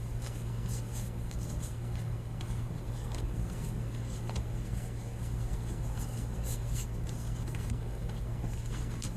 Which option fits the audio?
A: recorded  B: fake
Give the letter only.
B